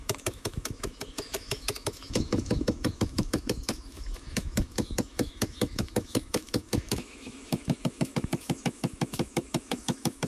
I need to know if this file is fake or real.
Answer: fake